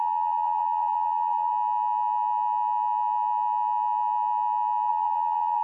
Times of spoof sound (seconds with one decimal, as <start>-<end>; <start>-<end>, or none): 0.0-1.5; 4.9-5.6